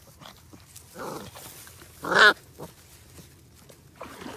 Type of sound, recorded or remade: recorded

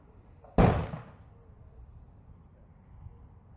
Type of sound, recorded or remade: recorded